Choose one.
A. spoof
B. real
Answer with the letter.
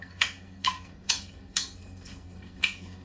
A